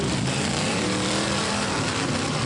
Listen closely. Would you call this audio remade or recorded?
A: remade